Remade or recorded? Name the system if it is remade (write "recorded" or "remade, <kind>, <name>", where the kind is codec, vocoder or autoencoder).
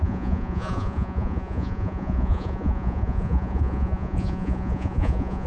remade, vocoder, Vocos